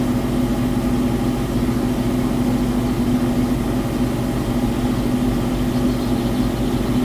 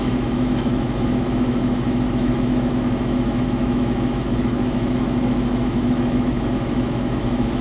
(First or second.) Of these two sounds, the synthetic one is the second